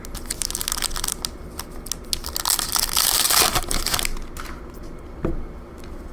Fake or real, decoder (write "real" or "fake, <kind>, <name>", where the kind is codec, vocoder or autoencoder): real